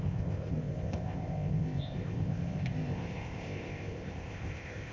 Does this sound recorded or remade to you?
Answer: remade